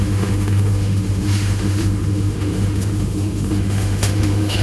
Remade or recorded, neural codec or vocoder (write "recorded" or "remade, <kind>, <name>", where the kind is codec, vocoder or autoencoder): remade, autoencoder, DAC-VAE